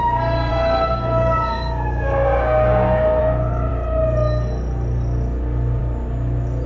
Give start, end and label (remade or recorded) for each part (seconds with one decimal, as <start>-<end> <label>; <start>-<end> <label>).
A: 0.0-0.5 recorded; 0.5-3.2 remade; 3.2-6.7 recorded